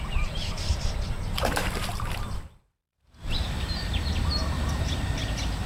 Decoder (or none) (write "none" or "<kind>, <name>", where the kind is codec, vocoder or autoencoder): vocoder, BigVGAN v2